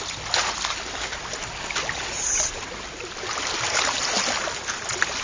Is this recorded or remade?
recorded